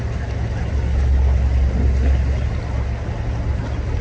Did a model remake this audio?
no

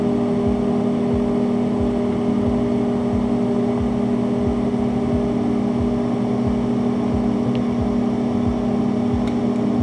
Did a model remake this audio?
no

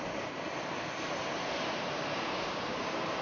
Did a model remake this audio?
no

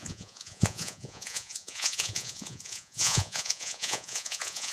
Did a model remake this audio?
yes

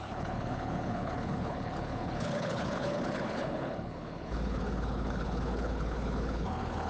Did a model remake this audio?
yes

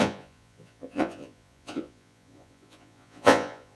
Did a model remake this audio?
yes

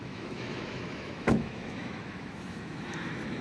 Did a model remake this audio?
yes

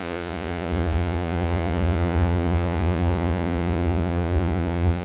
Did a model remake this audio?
yes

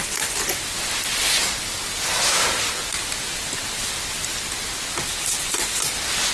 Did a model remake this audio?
no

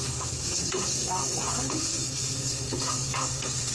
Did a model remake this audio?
yes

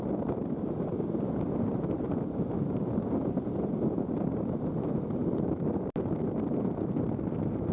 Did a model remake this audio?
no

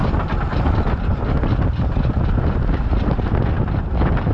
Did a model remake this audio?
no